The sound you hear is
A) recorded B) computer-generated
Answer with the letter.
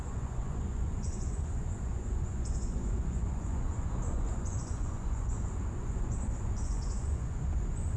B